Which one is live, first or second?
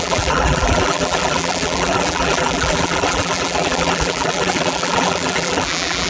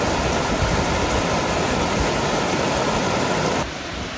second